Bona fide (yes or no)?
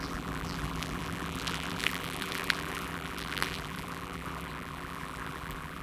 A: no